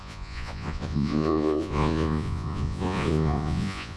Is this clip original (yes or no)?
no